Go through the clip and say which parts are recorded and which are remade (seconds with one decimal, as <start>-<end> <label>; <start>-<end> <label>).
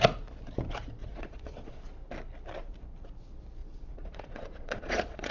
0.0-1.0 recorded; 1.0-1.8 remade; 1.8-3.6 recorded; 3.6-5.3 remade